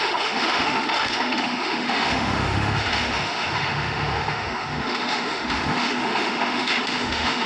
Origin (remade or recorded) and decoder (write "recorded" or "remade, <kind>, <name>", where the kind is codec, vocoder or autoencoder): remade, autoencoder, DAC-VAE